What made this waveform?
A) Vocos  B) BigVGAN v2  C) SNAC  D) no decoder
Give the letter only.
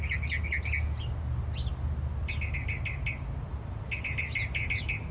D